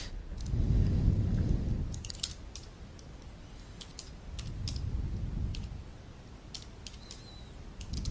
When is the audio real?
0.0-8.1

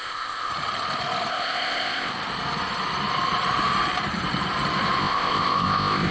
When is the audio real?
0.5-1.3; 2.1-5.0